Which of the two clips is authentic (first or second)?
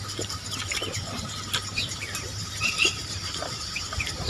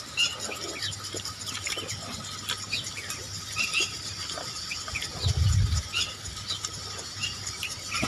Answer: second